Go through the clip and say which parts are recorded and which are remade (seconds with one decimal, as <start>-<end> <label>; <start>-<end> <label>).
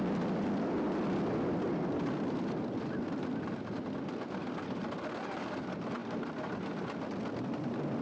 0.0-8.0 recorded